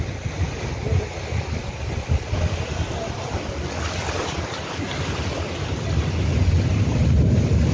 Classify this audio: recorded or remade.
recorded